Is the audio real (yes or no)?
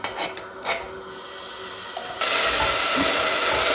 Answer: yes